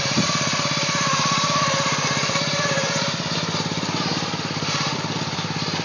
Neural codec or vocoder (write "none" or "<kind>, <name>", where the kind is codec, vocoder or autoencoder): vocoder, BigVGAN v2